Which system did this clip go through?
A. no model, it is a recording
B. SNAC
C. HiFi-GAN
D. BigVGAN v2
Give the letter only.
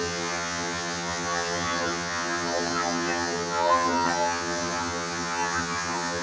C